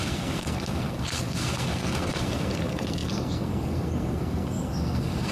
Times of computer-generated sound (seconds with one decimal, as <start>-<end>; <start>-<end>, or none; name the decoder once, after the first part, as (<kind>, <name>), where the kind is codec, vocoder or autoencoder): 0.0-5.3 (codec, SNAC)